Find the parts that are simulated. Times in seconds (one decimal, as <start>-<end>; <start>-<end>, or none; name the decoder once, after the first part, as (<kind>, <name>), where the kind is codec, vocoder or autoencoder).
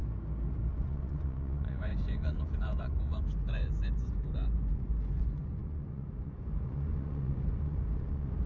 0.7-8.5 (vocoder, Vocos)